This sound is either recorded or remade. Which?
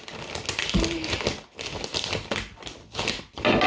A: recorded